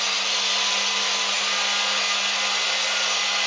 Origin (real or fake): real